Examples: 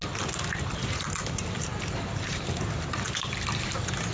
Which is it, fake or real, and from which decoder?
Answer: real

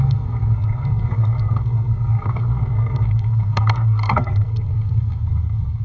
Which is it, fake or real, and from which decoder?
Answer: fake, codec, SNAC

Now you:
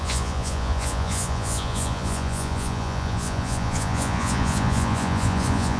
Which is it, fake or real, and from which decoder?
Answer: fake, vocoder, Vocos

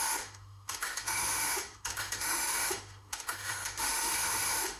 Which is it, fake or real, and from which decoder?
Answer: fake, autoencoder, DAC-VAE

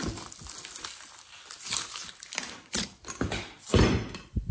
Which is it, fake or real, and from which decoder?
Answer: real